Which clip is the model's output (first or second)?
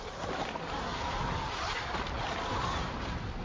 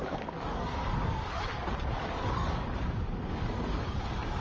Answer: second